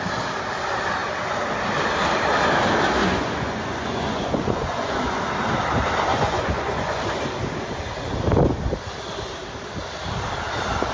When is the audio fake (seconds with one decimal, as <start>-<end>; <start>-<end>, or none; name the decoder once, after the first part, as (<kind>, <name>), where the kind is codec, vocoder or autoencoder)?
3.0-5.2 (vocoder, Vocos); 6.1-7.0